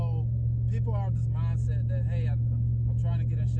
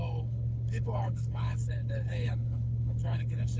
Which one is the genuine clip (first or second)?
first